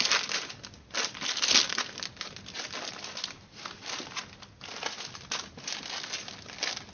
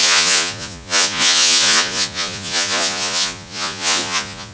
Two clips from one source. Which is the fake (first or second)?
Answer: second